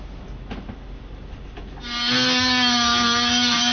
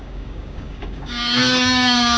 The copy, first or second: second